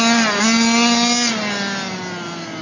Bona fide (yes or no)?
yes